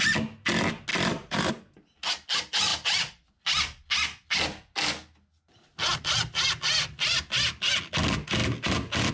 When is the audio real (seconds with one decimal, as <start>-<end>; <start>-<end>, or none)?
0.0-0.9; 1.5-8.4